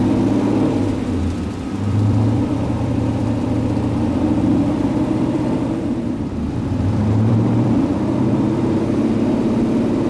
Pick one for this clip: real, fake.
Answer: fake